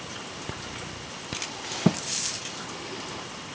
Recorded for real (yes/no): yes